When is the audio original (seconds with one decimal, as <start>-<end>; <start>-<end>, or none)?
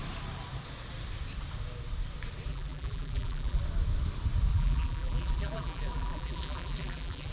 0.0-2.5; 3.6-4.5